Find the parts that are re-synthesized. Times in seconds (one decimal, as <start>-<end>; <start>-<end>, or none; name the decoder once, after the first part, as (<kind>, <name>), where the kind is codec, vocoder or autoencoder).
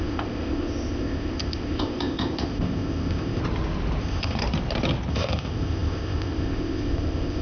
0.0-3.4 (codec, ZipCodec); 4.0-4.4; 5.1-7.4